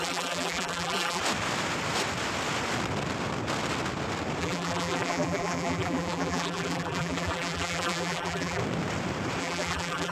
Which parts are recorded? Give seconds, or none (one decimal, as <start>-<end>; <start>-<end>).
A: 1.2-4.4; 8.6-9.4